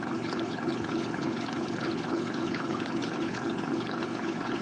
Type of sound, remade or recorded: remade